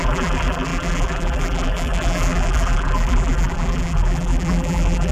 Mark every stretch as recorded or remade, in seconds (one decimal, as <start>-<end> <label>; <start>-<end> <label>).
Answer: 0.0-5.1 remade